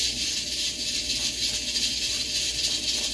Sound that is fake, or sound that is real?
real